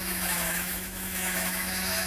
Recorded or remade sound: remade